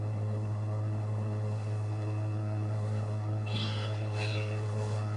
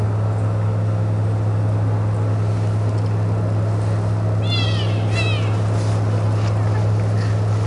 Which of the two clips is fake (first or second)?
first